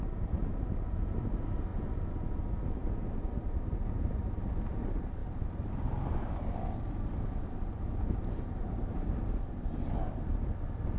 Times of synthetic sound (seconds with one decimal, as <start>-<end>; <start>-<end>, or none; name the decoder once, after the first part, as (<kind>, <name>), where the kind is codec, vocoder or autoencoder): 0.0-1.7 (vocoder, BigVGAN v2); 3.1-5.2; 6.3-11.0